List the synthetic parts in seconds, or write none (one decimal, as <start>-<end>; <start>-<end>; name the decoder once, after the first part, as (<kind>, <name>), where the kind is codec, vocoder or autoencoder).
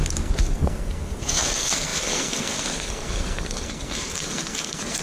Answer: 0.0-5.0 (codec, SNAC)